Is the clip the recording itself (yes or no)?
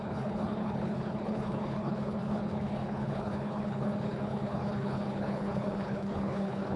no